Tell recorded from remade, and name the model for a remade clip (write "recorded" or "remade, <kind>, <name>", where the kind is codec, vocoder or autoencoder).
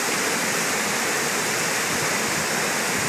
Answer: recorded